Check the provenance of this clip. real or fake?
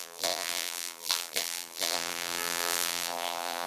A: fake